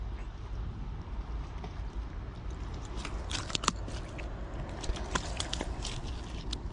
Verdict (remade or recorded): recorded